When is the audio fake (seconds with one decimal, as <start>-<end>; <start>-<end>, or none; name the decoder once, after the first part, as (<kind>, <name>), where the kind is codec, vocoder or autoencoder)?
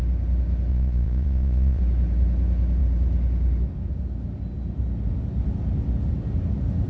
0.7-1.8 (vocoder, Vocos)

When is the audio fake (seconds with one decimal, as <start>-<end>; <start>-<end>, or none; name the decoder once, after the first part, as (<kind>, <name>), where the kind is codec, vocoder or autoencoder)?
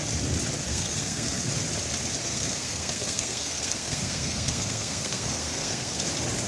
0.7-1.5 (codec, SNAC); 2.2-6.1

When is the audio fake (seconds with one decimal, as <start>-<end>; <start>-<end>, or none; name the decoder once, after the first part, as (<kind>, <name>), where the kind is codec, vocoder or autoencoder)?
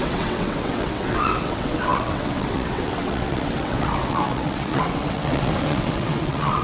0.0-6.6 (vocoder, WaveNeXt)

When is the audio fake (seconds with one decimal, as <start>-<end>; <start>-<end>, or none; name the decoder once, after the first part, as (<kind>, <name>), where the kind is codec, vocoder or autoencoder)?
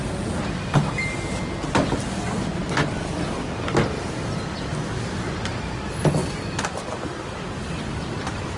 none